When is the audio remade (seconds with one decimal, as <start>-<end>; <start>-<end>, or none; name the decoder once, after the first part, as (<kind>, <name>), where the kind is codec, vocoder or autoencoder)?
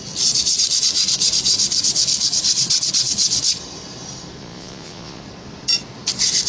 4.4-5.2 (vocoder, Vocos)